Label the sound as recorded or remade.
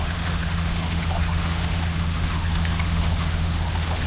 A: remade